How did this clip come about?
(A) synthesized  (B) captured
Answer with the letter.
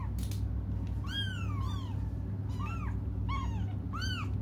B